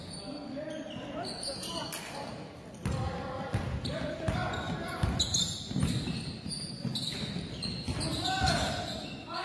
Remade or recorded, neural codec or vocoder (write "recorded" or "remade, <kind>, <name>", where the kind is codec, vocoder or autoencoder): recorded